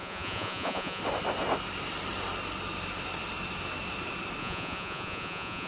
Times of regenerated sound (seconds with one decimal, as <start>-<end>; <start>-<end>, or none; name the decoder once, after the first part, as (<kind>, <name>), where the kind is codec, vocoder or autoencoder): 0.0-1.0 (vocoder, Vocos); 4.4-5.7